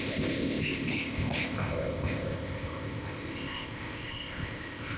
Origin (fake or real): fake